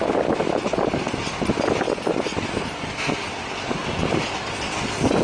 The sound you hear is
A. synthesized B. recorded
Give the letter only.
B